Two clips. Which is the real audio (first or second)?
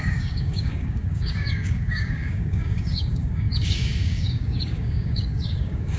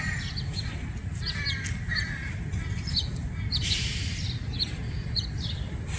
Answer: second